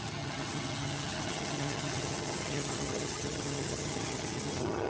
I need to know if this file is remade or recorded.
remade